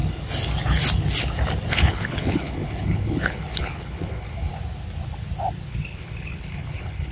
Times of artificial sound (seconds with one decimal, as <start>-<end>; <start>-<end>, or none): 1.7-4.5; 5.7-7.1